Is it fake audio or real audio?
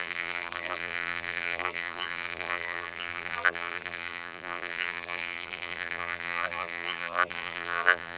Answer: fake